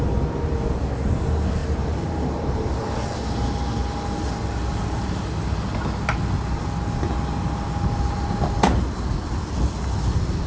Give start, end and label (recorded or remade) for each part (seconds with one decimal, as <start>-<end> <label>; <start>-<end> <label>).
0.0-1.6 recorded; 1.6-2.8 remade; 2.8-10.5 recorded